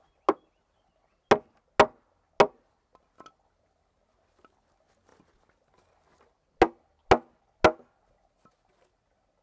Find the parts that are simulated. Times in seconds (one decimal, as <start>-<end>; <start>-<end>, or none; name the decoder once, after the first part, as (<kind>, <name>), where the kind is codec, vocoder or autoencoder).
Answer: none